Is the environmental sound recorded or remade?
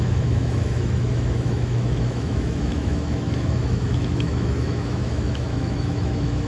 remade